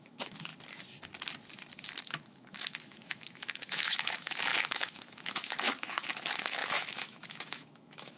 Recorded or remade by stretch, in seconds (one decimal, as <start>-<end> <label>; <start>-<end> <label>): 0.0-0.5 remade; 0.5-2.0 recorded; 2.0-8.2 remade